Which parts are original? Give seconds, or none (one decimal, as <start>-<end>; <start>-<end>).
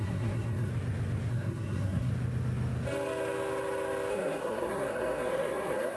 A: 0.7-1.3; 2.1-4.1